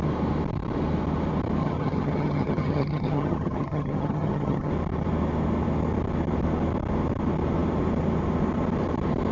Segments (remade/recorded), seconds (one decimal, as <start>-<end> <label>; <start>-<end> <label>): 0.0-1.6 recorded; 1.6-4.7 remade; 4.7-9.3 recorded